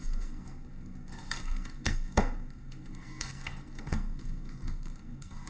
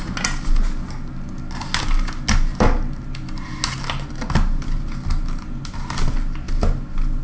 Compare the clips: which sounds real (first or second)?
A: second